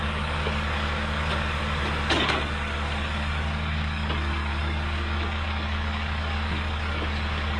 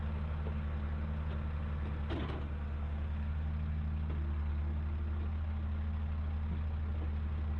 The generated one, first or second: first